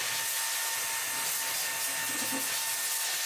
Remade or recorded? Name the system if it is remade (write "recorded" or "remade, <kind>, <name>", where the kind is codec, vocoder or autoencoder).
recorded